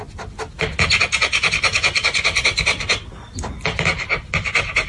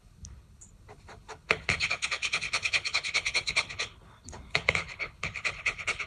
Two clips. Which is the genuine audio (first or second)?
first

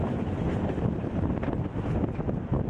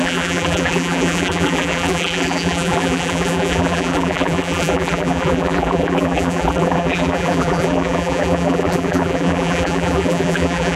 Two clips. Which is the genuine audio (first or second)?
first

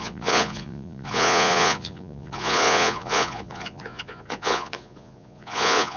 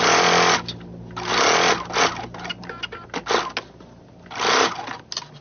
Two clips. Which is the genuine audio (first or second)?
second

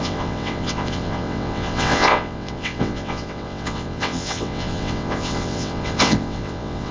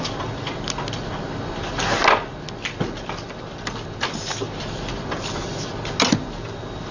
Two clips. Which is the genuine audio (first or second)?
second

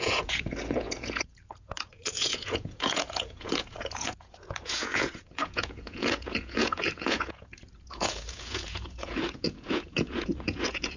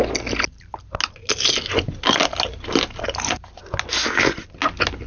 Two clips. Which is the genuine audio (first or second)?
second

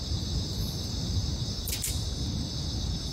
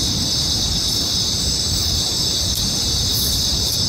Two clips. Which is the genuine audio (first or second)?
first